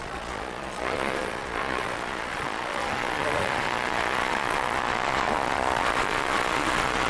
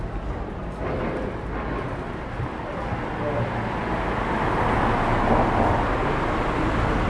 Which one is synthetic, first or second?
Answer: first